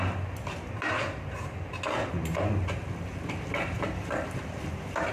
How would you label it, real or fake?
real